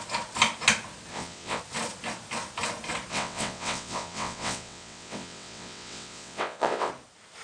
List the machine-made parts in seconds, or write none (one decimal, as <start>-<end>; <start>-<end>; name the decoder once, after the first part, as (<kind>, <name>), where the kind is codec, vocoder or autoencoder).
1.1-1.6 (vocoder, WaveNeXt); 3.1-6.9